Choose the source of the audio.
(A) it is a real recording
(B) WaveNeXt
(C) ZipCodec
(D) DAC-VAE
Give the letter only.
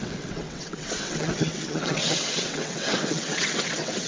B